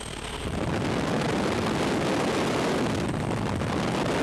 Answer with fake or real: real